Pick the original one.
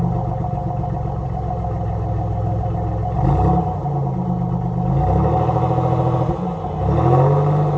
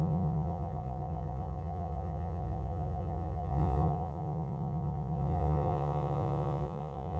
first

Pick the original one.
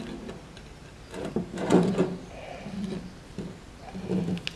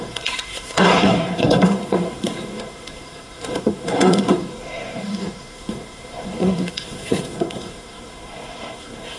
first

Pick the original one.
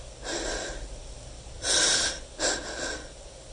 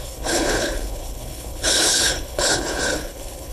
first